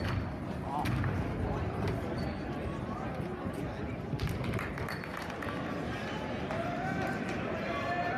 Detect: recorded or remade recorded